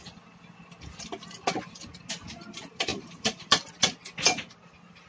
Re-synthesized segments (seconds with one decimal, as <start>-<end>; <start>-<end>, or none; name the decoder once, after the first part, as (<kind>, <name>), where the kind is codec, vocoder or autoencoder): 2.9-3.7 (vocoder, BigVGAN v2)